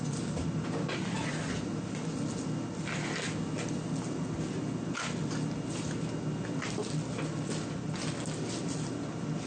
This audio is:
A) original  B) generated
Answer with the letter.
A